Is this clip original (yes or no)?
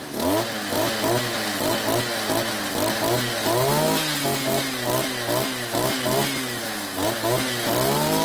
yes